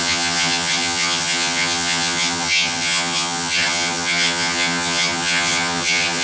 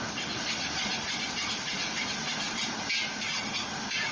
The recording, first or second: second